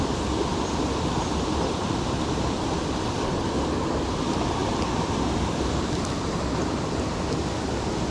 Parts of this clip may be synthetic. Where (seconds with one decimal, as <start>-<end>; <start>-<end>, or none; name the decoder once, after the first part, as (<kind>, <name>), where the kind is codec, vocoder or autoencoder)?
none